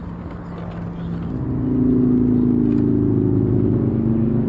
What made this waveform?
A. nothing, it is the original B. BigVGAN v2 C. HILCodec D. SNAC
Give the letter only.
A